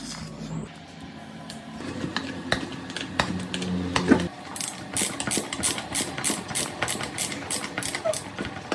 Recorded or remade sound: recorded